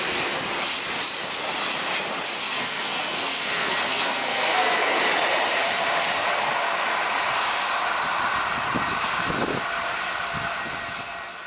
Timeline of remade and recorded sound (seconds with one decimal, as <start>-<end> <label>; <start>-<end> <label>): 0.0-2.4 recorded; 2.4-5.0 remade; 5.0-11.5 recorded